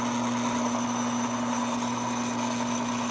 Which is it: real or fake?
real